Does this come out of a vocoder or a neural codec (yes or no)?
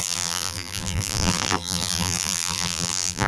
yes